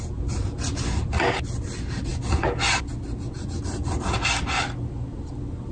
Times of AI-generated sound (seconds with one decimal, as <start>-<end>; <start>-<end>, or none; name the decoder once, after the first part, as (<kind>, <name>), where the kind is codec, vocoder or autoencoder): none